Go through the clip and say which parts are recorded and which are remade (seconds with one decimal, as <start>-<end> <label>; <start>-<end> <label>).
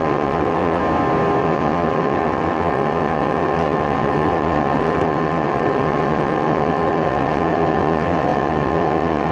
0.0-0.8 remade; 0.8-1.4 recorded; 1.4-9.3 remade